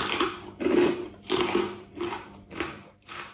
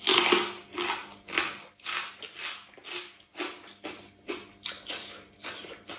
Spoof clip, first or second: first